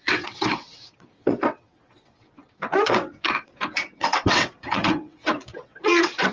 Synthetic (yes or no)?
yes